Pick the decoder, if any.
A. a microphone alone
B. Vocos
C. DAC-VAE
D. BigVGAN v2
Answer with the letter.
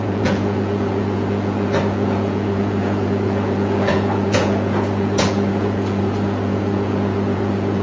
B